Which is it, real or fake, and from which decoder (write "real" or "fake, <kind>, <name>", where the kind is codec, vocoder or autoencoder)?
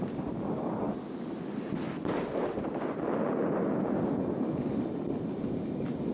real